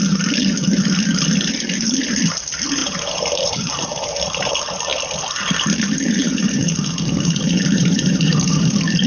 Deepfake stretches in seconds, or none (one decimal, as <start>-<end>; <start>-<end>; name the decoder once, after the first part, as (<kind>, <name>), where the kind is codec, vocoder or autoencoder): 2.8-4.5 (vocoder, BigVGAN v2); 6.2-9.1